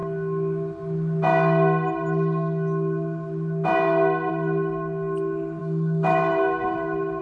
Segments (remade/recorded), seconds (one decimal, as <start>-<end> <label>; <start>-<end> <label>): 0.0-5.6 recorded; 5.6-7.2 remade